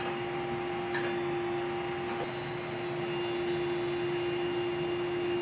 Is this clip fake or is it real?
real